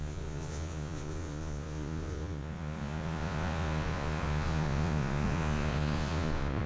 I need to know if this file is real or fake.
fake